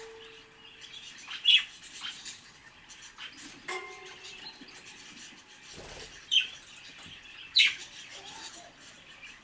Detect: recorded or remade recorded